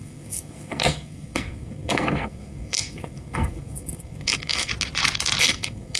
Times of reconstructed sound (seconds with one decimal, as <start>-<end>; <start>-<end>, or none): 0.0-4.7; 5.4-6.0